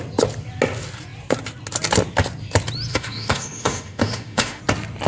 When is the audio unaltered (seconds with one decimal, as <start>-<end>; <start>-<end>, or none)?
0.0-2.9; 4.6-5.1